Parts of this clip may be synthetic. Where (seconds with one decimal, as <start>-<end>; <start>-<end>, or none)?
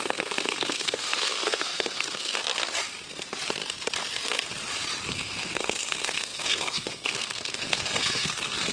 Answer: 0.0-2.4; 5.1-8.7